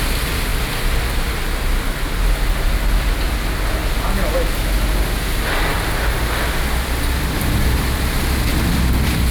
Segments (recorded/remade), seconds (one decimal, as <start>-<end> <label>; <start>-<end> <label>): 0.0-9.3 recorded

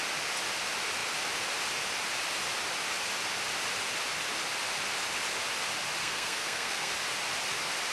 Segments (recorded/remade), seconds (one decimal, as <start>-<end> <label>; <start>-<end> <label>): 0.0-6.0 recorded; 6.0-6.9 remade; 6.9-7.9 recorded

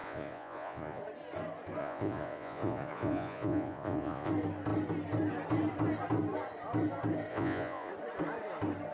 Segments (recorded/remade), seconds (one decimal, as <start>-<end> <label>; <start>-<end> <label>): 0.0-1.0 remade; 1.0-1.8 recorded; 1.8-4.3 remade; 4.3-7.3 recorded; 7.3-7.9 remade; 7.9-8.9 recorded